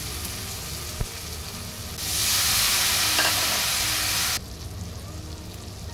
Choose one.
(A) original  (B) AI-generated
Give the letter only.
A